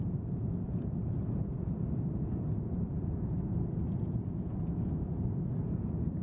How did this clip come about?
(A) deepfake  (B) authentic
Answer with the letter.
A